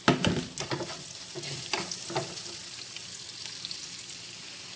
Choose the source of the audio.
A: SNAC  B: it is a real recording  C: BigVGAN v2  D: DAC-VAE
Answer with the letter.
B